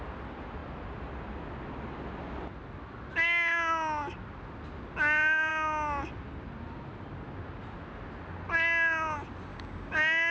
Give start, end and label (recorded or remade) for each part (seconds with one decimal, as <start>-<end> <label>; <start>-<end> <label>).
0.0-9.5 recorded; 9.5-10.3 remade